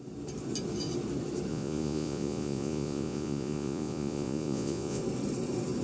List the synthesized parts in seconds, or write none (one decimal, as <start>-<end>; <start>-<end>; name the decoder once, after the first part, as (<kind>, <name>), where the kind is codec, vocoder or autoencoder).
1.5-5.0 (vocoder, Vocos)

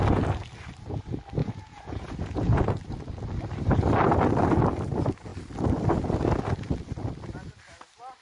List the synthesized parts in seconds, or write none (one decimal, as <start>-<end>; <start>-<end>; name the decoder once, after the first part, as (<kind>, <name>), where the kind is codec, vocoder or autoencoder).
1.4-2.6 (vocoder, Vocos)